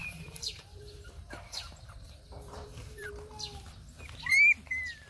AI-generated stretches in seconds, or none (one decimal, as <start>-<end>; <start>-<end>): 0.0-3.1